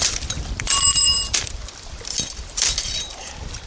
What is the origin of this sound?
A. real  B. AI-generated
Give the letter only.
B